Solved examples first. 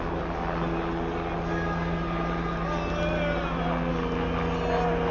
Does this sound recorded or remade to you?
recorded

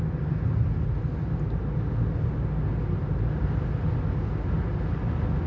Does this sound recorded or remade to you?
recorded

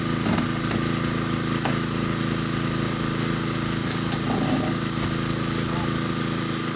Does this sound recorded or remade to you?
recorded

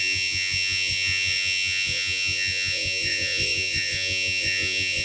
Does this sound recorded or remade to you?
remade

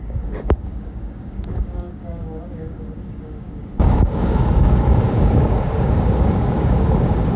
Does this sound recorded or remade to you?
remade